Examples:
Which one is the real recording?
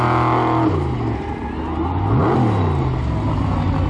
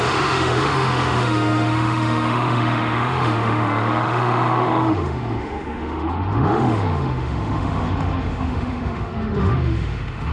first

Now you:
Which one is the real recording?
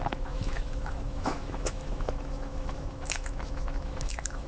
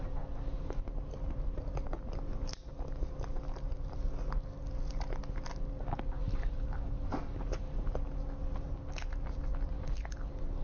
second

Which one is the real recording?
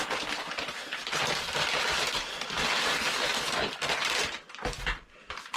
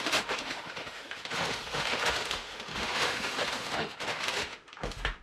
first